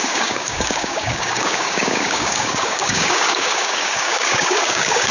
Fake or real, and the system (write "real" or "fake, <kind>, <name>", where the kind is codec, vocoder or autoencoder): fake, codec, DAC